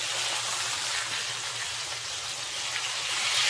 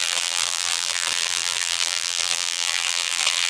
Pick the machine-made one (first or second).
second